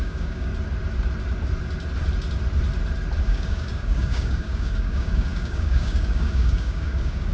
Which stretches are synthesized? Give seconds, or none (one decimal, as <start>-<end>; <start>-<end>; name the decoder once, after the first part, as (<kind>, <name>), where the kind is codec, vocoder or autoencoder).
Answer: 0.0-0.5 (codec, DAC); 3.2-7.3